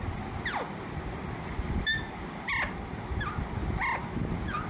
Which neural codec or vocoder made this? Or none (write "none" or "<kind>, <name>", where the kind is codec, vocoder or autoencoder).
none